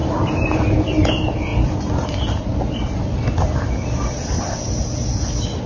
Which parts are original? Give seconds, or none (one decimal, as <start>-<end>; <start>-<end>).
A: 0.6-1.5; 2.3-5.7